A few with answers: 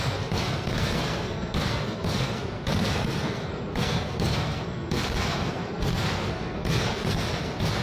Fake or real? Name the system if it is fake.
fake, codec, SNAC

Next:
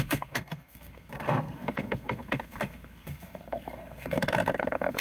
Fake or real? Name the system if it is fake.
fake, codec, SNAC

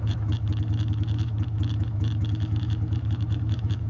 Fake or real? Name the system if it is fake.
fake, autoencoder, DAC-VAE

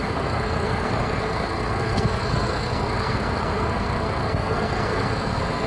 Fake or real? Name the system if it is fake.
fake, codec, SNAC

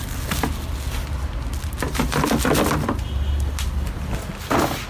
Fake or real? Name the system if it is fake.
real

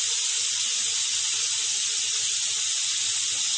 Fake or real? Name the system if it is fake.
real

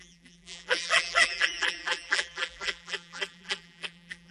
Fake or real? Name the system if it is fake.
fake, vocoder, BigVGAN v2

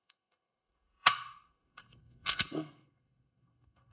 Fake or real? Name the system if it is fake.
fake, codec, SNAC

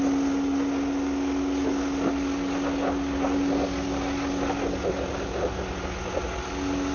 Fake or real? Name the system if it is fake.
real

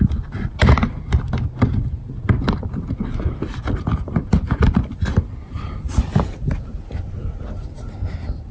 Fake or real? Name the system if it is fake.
real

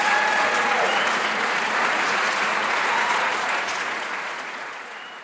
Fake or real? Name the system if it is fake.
fake, vocoder, Vocos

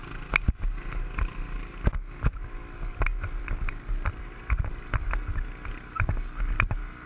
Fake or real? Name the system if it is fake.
real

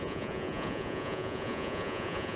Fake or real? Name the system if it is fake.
fake, vocoder, Vocos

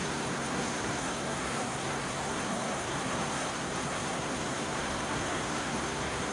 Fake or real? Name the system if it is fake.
fake, codec, SNAC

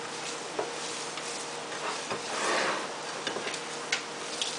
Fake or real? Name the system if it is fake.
real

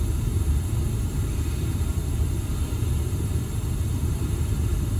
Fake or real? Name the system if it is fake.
real